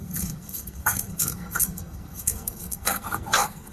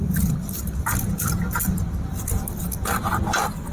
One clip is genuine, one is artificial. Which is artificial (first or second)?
first